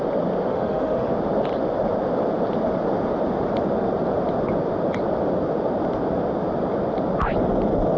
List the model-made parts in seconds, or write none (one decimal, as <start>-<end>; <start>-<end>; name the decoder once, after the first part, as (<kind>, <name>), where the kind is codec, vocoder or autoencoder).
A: 0.5-1.1 (autoencoder, DAC-VAE)